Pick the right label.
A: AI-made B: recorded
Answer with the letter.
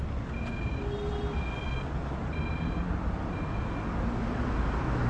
B